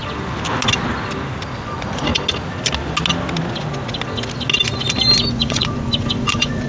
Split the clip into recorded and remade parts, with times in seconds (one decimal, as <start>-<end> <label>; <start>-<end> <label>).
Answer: 0.0-1.6 recorded; 1.6-2.1 remade; 2.1-5.3 recorded; 5.3-6.7 remade